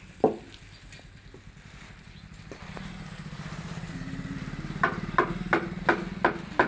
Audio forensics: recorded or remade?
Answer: recorded